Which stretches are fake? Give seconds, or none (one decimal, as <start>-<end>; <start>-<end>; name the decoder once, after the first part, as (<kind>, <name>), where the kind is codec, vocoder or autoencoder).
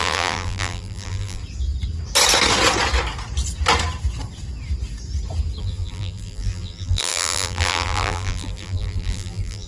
0.0-1.4 (vocoder, BigVGAN v2); 5.6-9.7